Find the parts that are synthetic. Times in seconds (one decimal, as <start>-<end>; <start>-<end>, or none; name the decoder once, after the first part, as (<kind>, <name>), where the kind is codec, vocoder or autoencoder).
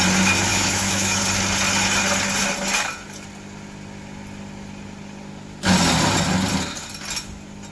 0.5-1.2 (autoencoder, DAC-VAE)